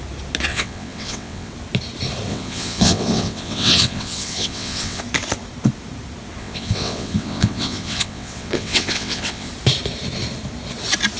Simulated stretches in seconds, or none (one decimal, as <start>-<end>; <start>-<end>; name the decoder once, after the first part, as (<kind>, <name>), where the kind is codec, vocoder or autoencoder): 0.5-1.5 (vocoder, WaveNeXt); 2.3-5.0; 6.4-9.5